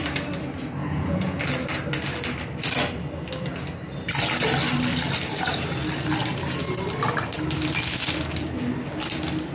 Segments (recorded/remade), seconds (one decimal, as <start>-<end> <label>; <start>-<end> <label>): 0.0-0.8 recorded; 0.8-1.4 remade; 1.4-9.5 recorded